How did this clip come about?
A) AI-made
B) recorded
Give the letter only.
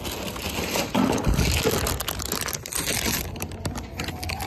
B